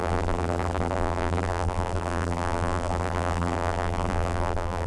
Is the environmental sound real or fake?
fake